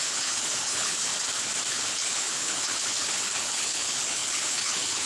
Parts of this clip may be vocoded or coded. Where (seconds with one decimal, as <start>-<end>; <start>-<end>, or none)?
0.0-1.1; 1.7-5.1